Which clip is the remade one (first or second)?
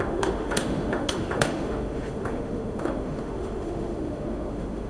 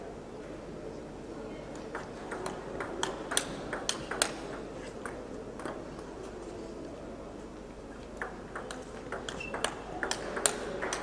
first